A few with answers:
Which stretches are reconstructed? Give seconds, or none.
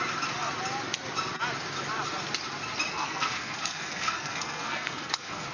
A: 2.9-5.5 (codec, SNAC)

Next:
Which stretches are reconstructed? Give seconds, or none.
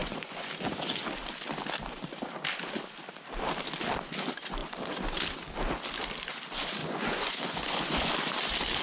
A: 0.0-0.5 (vocoder, Vocos); 6.8-8.1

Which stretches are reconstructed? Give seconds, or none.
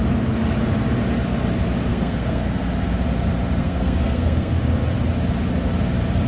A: 1.9-2.6 (codec, SNAC); 3.6-4.5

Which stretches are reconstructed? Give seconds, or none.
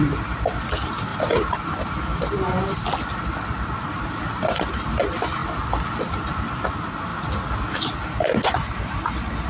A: 1.1-4.3 (vocoder, BigVGAN v2); 7.1-7.6